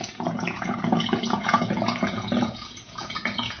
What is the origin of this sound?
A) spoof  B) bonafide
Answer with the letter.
A